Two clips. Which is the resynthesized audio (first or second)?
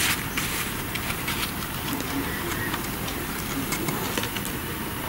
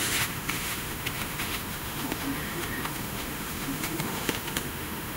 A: second